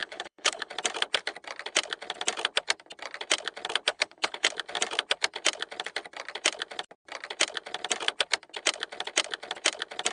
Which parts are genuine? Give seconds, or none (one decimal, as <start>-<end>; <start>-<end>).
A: 0.7-3.9; 4.5-10.1